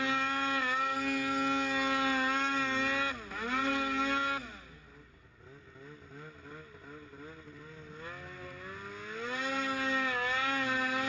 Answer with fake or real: real